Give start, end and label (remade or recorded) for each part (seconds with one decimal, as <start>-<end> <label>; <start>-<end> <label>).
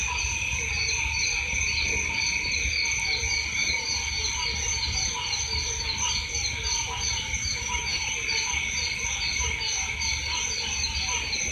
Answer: 0.0-7.4 recorded; 7.4-8.1 remade; 8.1-11.5 recorded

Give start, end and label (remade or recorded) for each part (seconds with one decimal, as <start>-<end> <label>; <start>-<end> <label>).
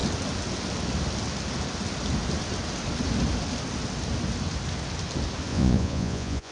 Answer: 0.0-5.5 recorded; 5.5-6.5 remade